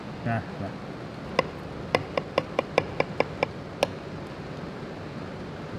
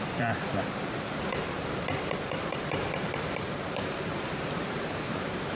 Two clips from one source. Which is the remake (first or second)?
second